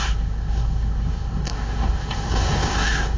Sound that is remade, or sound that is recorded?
remade